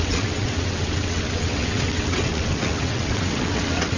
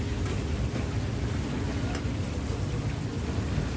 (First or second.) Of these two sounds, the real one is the second